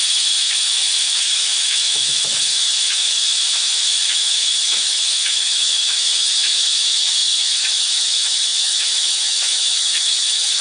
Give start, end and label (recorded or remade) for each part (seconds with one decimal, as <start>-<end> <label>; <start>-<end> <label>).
0.0-10.6 remade